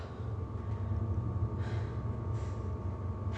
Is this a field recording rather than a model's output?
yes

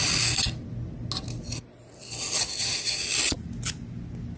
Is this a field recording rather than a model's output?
yes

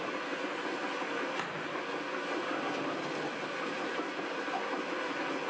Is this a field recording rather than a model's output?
yes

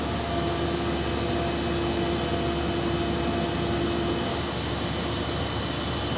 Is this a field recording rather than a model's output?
yes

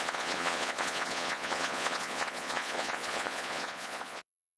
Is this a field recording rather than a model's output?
no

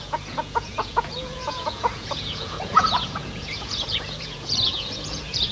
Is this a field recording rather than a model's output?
no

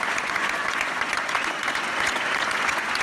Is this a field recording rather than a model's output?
no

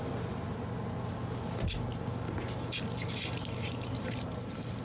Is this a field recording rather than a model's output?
yes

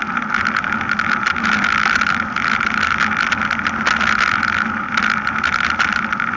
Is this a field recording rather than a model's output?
yes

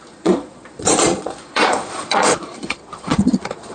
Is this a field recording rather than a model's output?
no